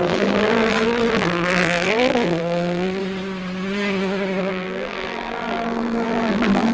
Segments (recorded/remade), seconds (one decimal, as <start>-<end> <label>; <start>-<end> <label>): 0.0-3.0 remade; 3.0-4.4 recorded; 4.4-6.7 remade